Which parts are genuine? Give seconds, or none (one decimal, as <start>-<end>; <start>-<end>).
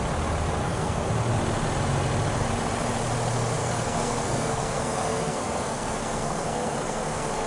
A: 0.0-0.6; 1.1-3.6